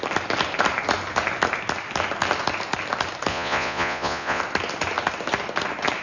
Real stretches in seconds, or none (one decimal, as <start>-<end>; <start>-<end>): 0.0-3.3; 4.4-6.0